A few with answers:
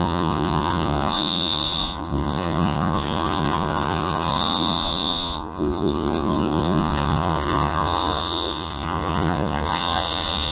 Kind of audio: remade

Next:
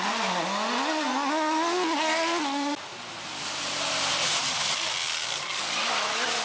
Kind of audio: recorded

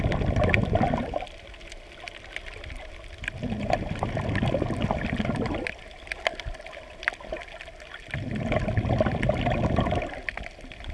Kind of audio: recorded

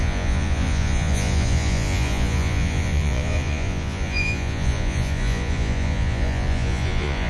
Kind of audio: remade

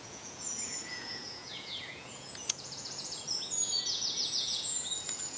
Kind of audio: remade